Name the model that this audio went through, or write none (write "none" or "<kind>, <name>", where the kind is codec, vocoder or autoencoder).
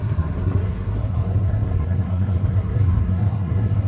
codec, SNAC